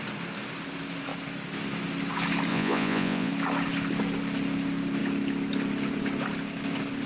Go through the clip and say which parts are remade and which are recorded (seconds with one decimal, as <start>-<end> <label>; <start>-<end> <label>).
0.0-2.5 recorded; 2.5-3.3 remade; 3.3-7.1 recorded